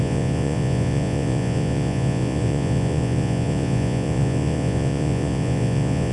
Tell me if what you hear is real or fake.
fake